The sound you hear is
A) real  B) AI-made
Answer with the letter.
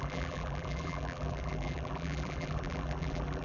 B